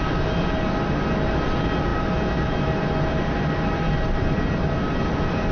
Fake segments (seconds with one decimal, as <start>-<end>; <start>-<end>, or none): none